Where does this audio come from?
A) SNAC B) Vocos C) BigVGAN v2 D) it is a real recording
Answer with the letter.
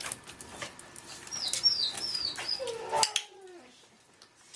D